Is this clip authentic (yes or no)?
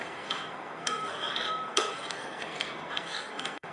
no